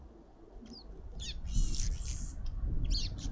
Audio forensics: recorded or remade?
recorded